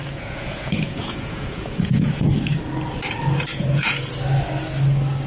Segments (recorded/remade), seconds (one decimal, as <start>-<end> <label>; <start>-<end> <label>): 0.0-2.3 remade; 2.3-3.5 recorded; 3.5-4.1 remade; 4.1-5.3 recorded